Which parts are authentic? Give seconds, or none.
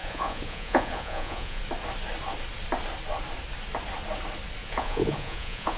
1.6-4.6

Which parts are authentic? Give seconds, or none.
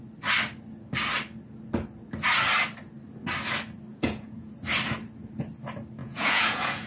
0.0-3.9; 4.5-6.0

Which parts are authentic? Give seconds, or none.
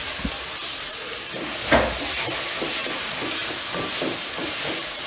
2.2-2.8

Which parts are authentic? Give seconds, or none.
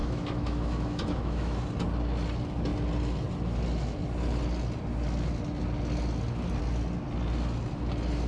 1.6-8.3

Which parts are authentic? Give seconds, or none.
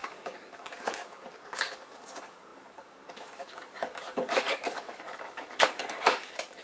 none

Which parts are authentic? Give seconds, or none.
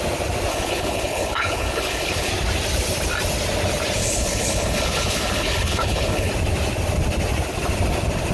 0.0-0.5; 2.3-4.0; 6.3-8.3